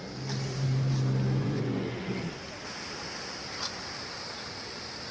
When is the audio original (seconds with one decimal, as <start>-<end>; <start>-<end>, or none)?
0.0-1.4; 2.1-5.1

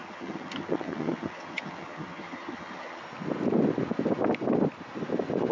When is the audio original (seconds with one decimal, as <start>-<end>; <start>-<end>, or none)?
3.0-5.5

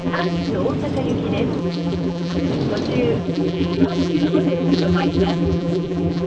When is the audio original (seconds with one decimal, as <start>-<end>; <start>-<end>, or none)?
0.5-1.6; 2.5-3.2

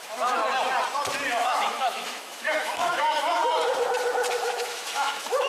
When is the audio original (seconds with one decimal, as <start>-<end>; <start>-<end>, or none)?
0.4-1.3; 3.4-4.4

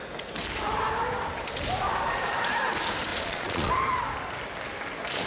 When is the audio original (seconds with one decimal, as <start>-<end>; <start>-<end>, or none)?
0.0-3.1; 3.7-5.3

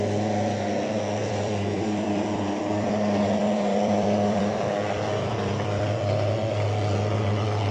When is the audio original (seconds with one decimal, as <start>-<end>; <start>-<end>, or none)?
0.0-1.2; 5.8-7.7

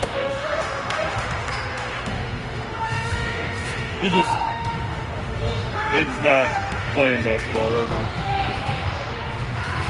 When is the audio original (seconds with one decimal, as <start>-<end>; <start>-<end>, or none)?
none

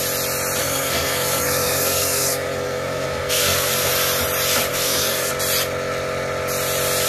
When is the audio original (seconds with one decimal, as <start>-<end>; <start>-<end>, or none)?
0.0-0.6; 3.9-4.7; 5.3-7.1